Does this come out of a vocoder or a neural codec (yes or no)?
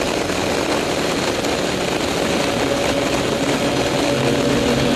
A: no